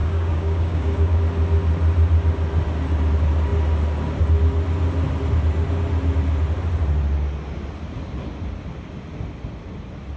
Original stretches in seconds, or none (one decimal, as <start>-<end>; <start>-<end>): 1.2-10.2